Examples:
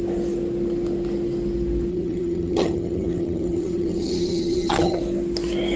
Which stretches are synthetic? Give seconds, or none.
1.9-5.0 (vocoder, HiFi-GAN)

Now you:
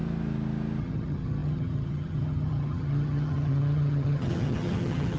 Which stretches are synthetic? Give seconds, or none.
0.8-5.2 (vocoder, HiFi-GAN)

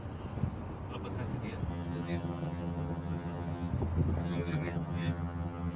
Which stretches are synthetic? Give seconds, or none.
1.7-3.7 (vocoder, HiFi-GAN); 4.2-5.8

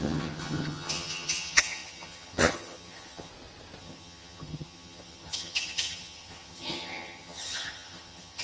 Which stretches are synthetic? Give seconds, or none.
0.0-3.3 (vocoder, HiFi-GAN); 3.8-8.4

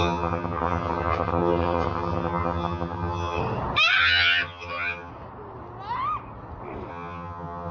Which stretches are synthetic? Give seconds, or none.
0.0-3.4 (vocoder, HiFi-GAN); 4.0-5.1; 6.9-7.7

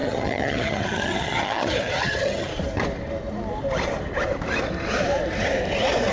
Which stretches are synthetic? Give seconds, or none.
0.0-2.5 (vocoder, HiFi-GAN)

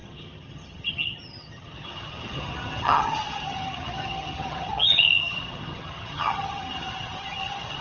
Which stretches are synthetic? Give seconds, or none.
0.0-7.8 (vocoder, HiFi-GAN)

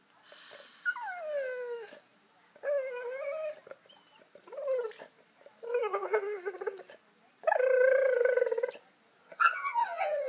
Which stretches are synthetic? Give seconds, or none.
9.2-10.3 (vocoder, HiFi-GAN)